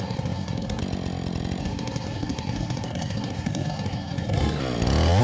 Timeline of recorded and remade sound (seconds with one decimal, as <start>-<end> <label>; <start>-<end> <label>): 0.0-0.8 remade; 0.8-1.6 recorded; 1.6-4.6 remade; 4.6-5.2 recorded

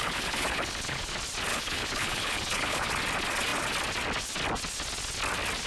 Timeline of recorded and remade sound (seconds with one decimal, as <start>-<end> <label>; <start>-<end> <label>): 0.0-1.1 remade; 1.1-1.5 recorded; 1.5-2.9 remade; 2.9-5.7 recorded

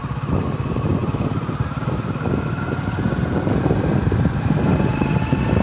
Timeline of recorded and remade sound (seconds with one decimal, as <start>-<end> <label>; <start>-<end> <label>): 0.0-5.6 recorded